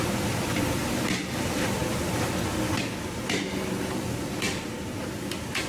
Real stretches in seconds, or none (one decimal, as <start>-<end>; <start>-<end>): 0.0-5.7